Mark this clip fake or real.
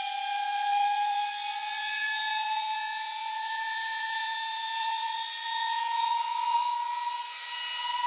fake